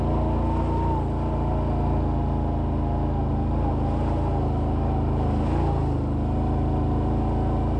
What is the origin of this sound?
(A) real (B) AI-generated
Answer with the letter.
A